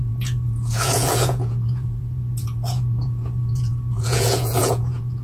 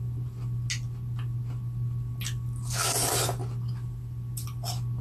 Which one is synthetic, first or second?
first